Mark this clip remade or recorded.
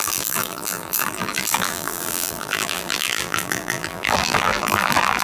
remade